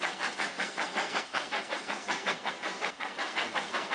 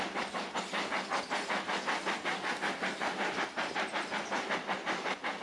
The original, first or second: second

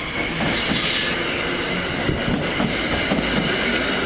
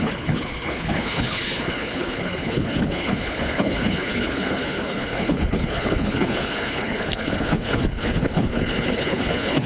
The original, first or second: first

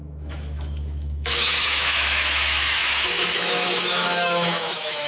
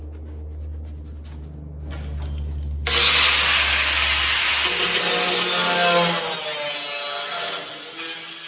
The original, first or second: second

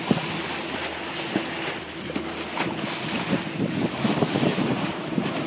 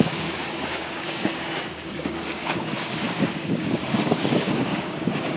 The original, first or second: first